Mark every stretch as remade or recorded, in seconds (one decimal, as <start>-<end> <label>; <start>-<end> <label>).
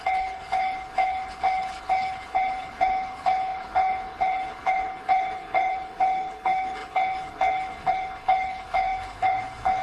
0.0-9.8 remade